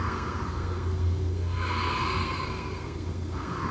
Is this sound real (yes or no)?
no